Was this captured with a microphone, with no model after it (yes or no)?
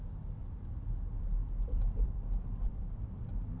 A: no